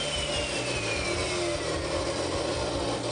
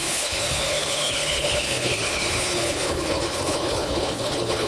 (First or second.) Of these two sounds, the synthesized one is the second